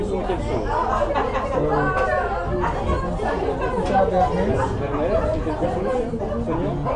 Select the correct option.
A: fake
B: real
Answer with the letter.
B